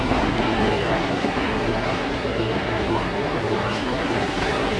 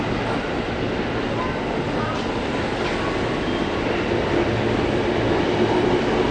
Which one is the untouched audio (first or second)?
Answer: second